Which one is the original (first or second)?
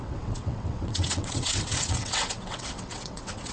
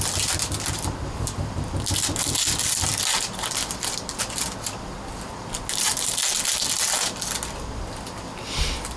second